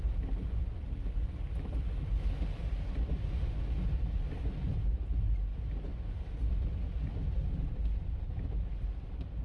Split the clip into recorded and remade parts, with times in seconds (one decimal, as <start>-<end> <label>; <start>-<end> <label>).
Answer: 0.0-9.4 recorded